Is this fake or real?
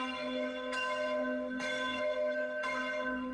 fake